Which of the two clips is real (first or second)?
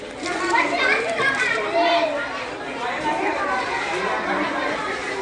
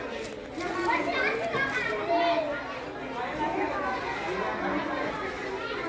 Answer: second